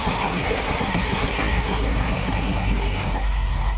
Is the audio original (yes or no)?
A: no